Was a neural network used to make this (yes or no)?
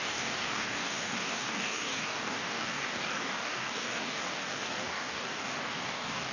yes